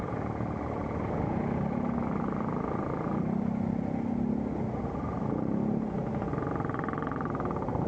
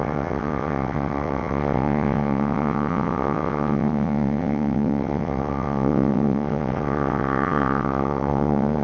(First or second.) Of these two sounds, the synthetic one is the second